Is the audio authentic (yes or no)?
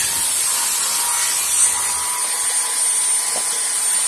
yes